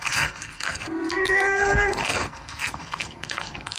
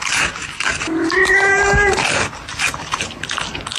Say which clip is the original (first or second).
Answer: second